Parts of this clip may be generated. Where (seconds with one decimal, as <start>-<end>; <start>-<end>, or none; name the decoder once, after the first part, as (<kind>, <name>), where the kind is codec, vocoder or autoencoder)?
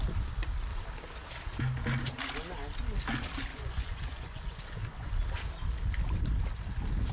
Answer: 3.5-5.1 (vocoder, Vocos)